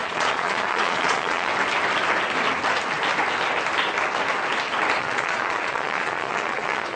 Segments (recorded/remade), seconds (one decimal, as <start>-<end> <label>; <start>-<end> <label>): 0.0-1.5 remade; 1.5-5.0 recorded; 5.0-7.0 remade